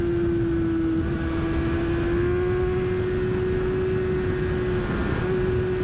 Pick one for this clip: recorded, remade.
recorded